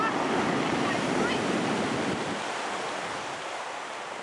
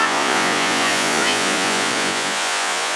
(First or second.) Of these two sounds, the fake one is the second